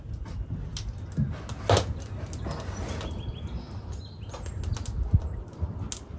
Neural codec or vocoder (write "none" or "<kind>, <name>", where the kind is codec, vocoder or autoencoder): none